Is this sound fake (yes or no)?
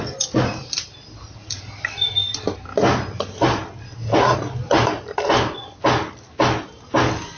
no